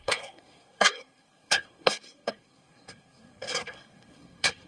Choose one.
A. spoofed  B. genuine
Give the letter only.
A